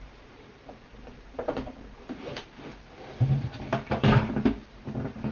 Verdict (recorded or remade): remade